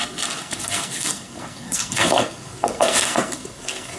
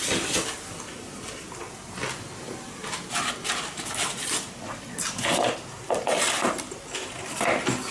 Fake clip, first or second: first